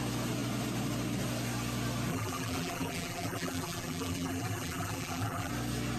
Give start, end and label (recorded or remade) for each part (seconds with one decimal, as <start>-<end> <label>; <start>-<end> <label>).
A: 0.0-2.1 recorded; 2.1-5.5 remade; 5.5-6.0 recorded